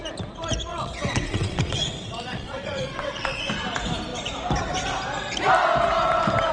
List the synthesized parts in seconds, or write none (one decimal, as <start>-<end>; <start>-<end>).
0.7-3.5